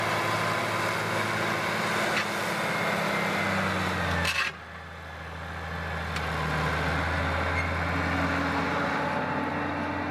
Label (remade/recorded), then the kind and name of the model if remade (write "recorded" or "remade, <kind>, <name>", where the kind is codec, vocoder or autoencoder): recorded